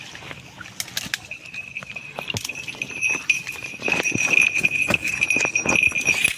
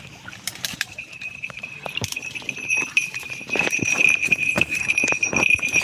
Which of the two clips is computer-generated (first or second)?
second